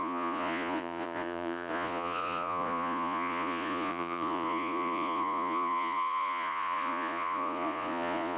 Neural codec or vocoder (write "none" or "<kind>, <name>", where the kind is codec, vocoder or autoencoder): vocoder, Vocos